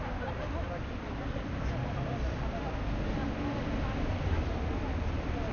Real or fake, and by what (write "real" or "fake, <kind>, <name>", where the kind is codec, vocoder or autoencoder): real